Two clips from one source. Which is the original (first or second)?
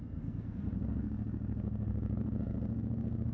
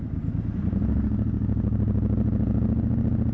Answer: second